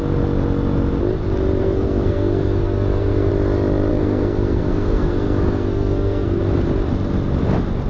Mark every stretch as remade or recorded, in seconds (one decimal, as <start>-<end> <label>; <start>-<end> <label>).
0.0-1.6 recorded; 1.6-3.3 remade; 3.3-3.9 recorded; 3.9-6.4 remade; 6.4-7.9 recorded